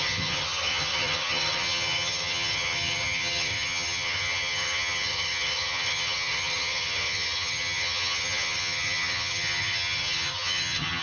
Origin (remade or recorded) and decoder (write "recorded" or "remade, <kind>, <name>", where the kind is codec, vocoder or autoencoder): remade, vocoder, HiFi-GAN